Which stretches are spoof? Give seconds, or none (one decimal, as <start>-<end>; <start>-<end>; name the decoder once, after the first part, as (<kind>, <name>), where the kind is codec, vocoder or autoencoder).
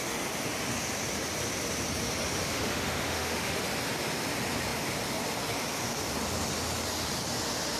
2.4-3.6 (autoencoder, DAC-VAE)